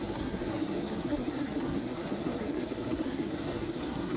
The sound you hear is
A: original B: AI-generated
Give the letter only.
B